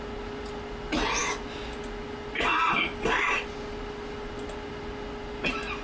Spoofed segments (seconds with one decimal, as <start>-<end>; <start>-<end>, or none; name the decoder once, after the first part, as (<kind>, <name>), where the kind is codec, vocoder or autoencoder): none